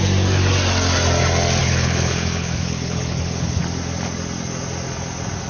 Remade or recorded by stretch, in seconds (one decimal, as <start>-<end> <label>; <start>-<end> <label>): 0.0-1.6 recorded; 1.6-3.6 remade; 3.6-5.5 recorded